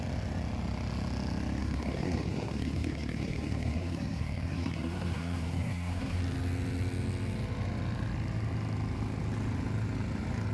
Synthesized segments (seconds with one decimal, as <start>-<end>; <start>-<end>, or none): 1.6-6.2